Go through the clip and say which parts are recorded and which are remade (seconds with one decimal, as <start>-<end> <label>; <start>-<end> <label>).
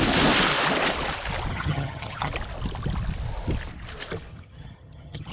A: 0.0-1.5 recorded; 1.5-2.3 remade; 2.3-4.3 recorded; 4.3-5.3 remade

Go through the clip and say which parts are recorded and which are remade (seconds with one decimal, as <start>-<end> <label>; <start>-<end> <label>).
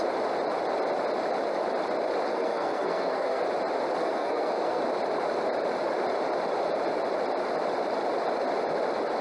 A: 0.0-2.3 recorded; 2.3-3.4 remade; 3.4-4.0 recorded; 4.0-4.8 remade; 4.8-9.2 recorded